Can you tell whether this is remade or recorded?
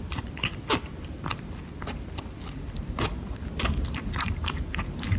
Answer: recorded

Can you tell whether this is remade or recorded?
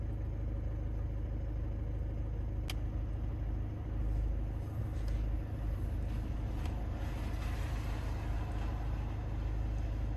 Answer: recorded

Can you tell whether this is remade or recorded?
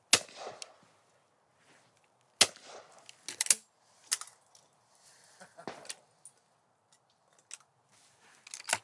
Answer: recorded